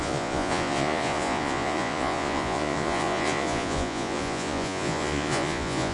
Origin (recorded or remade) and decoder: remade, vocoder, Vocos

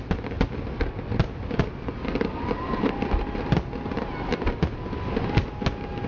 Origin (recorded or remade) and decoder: recorded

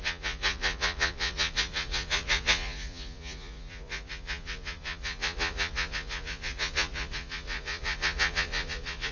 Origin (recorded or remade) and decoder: remade, vocoder, Vocos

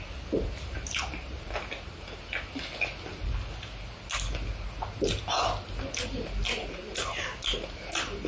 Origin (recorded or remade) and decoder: recorded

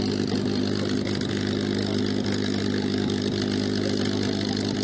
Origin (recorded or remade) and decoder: recorded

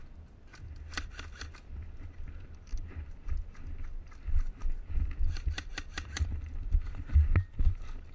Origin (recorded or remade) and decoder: recorded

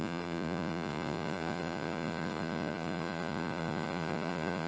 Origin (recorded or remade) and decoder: remade, vocoder, Vocos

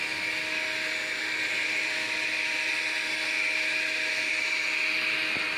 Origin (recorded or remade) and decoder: recorded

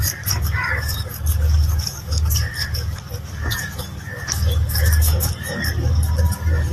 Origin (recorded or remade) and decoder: remade, codec, DAC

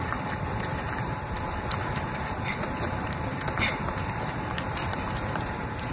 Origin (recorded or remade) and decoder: remade, vocoder, BigVGAN v2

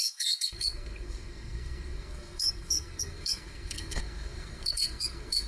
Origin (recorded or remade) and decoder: remade, codec, SNAC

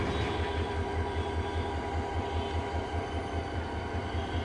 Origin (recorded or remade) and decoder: remade, vocoder, BigVGAN v2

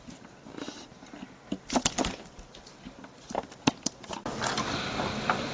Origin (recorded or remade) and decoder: recorded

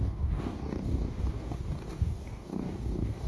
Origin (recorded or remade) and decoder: remade, codec, DAC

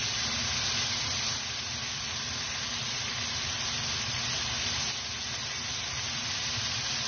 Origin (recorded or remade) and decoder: recorded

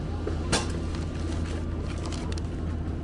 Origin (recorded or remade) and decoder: recorded